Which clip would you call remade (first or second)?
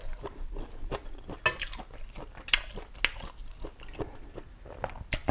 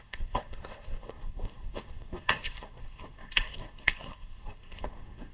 second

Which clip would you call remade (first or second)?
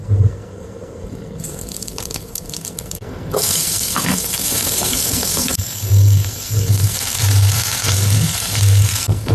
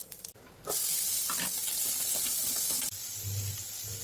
first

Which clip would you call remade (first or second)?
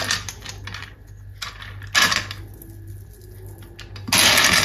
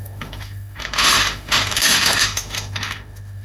second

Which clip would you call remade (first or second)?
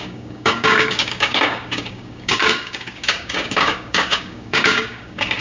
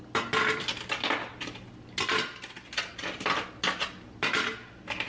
first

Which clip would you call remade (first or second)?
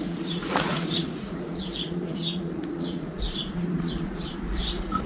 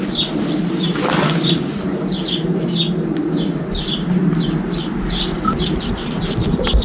first